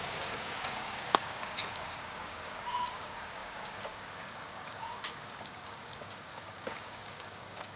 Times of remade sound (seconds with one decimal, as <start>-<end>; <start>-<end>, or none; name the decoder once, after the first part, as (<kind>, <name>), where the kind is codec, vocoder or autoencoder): 0.0-7.8 (codec, DAC)